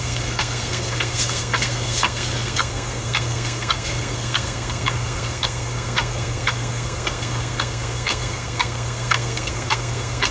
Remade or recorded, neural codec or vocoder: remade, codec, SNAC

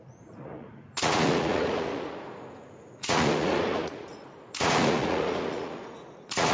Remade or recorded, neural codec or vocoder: remade, vocoder, Vocos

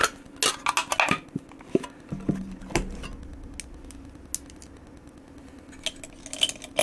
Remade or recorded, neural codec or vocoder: recorded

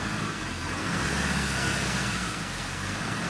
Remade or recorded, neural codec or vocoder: remade, codec, SNAC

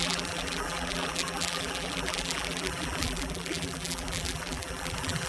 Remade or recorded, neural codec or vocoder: remade, vocoder, BigVGAN v2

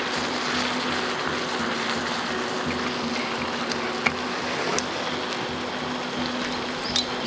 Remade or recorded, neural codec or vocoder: recorded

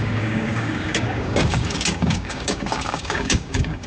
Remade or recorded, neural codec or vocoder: remade, codec, DAC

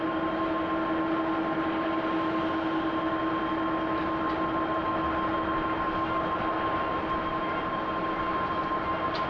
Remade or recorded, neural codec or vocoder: recorded